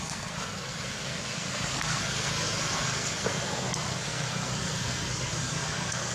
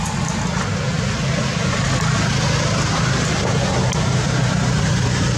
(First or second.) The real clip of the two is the second